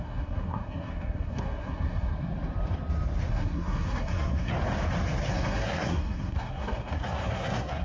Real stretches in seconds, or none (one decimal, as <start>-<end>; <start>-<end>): 2.3-3.3; 4.5-5.3